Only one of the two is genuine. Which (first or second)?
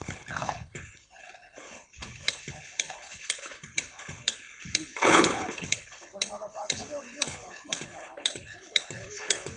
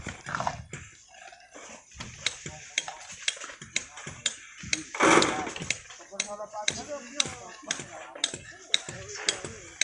second